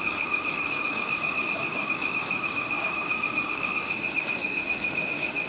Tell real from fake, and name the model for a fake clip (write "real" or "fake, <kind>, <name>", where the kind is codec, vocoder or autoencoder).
fake, codec, DAC